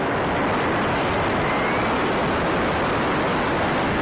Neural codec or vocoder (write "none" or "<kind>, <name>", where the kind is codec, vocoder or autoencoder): none